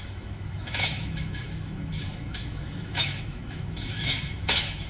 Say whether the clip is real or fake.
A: fake